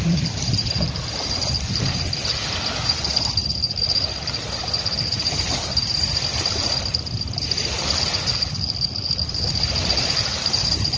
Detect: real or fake real